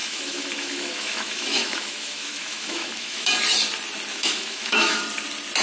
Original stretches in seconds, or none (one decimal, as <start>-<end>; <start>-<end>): 3.3-4.1; 5.0-5.6